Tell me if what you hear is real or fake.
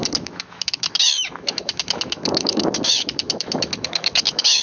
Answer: fake